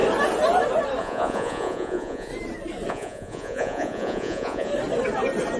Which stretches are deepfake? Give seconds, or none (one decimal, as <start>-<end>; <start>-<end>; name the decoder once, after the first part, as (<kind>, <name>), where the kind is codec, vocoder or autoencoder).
1.0-2.3 (vocoder, Vocos); 2.9-4.7